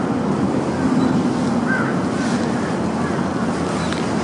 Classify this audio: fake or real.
real